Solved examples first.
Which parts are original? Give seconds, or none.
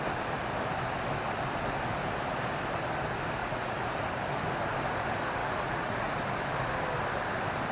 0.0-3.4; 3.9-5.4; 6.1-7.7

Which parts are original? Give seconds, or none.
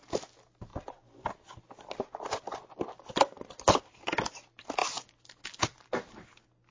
0.0-6.7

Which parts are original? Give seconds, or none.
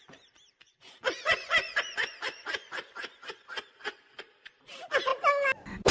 0.0-0.7; 4.2-5.9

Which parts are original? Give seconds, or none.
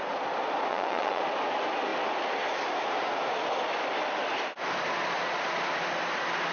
0.0-0.7; 1.2-6.5